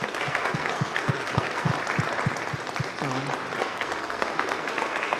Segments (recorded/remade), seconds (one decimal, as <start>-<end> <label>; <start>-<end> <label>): 0.0-1.7 remade; 1.7-3.6 recorded; 3.6-5.2 remade